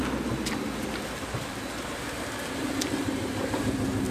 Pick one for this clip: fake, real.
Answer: real